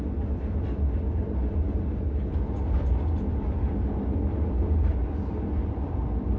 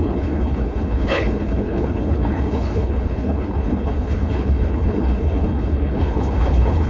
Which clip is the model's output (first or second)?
second